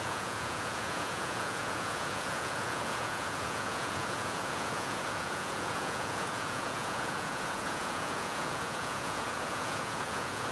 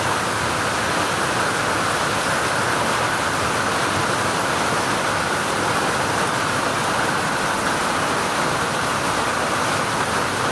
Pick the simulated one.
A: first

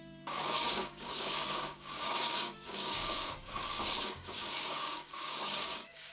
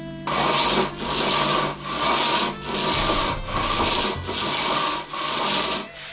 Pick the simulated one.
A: first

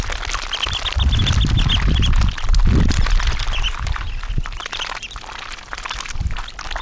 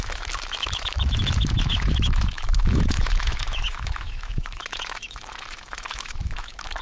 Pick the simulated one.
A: second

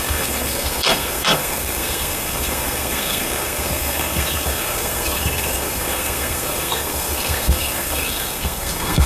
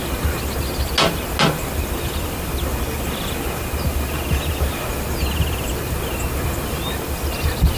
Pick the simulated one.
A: first